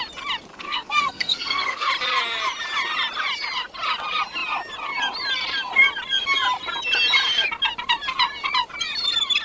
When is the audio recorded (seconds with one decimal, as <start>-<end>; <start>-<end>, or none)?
0.0-0.5; 1.9-9.4